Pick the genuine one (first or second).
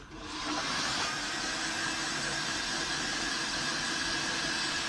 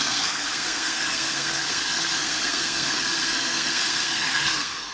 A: first